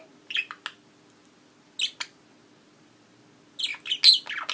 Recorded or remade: recorded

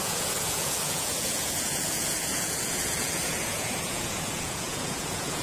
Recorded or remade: remade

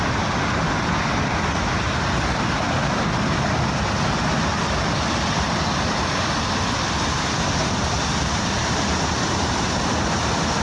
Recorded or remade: recorded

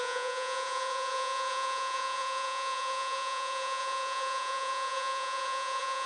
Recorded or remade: remade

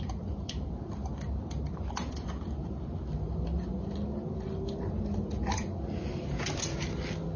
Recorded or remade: recorded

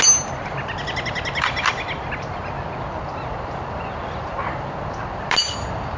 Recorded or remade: recorded